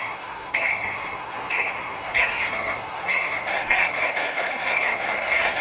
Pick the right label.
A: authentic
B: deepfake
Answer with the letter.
B